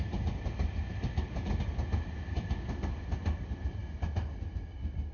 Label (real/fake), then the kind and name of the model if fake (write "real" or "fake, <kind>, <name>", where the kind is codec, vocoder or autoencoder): real